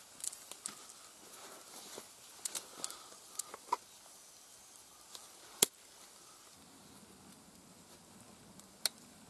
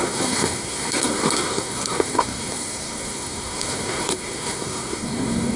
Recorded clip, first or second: first